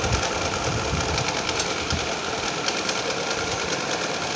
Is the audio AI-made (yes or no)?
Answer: no